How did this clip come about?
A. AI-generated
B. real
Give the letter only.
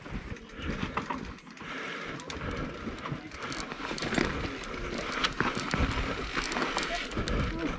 B